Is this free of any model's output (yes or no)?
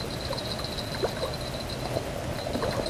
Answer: yes